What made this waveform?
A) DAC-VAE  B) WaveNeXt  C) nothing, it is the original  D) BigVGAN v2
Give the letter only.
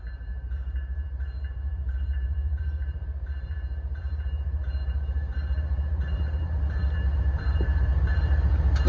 D